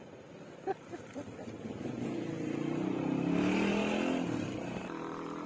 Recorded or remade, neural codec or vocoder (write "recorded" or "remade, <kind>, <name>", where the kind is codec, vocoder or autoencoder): recorded